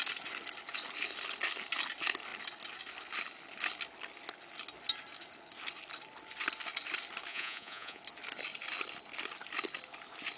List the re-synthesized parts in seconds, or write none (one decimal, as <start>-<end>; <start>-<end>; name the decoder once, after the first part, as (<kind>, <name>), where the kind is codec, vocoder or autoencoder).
7.3-8.0 (vocoder, Vocos)